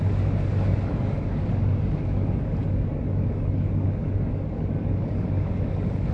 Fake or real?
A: fake